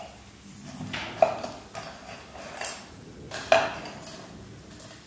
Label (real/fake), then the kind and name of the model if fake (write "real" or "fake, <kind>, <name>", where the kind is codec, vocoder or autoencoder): real